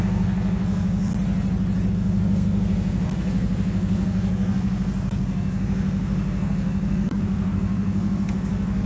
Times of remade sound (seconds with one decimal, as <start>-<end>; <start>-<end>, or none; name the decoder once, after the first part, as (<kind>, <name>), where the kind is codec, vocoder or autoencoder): 0.0-1.1 (codec, SNAC); 1.9-8.9